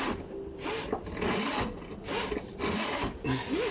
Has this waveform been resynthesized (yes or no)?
no